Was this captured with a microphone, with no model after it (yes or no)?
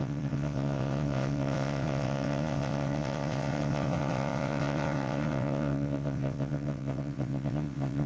no